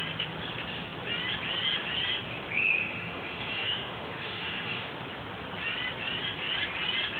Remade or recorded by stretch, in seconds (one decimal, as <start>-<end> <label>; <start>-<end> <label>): 0.0-2.8 recorded; 2.8-4.9 remade; 4.9-7.2 recorded